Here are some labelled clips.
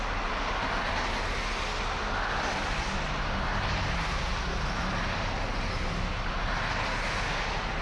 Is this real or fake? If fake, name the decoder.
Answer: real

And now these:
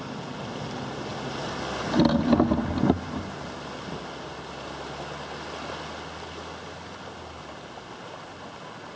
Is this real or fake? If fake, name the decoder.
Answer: real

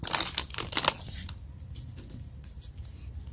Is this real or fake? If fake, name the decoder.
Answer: real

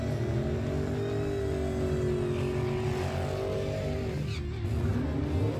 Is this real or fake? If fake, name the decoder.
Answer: real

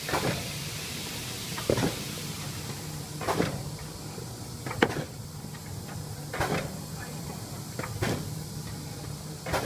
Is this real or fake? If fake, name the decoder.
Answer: fake, vocoder, BigVGAN v2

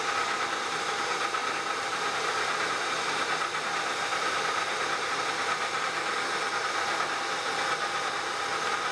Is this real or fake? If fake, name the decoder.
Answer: real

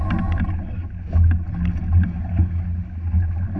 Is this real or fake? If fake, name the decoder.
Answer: real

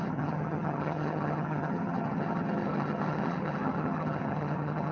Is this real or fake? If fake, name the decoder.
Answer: fake, vocoder, HiFi-GAN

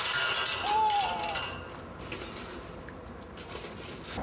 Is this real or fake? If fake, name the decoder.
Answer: real